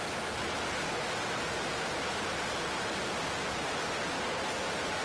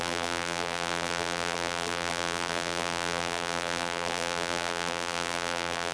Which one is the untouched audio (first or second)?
first